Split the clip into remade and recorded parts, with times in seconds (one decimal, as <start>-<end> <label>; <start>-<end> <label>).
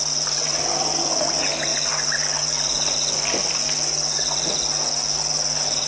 0.0-5.9 recorded